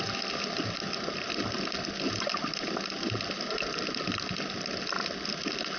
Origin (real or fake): real